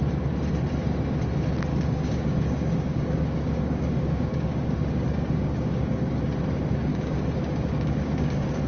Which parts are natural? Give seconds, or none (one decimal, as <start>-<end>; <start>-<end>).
0.0-1.7; 6.2-6.9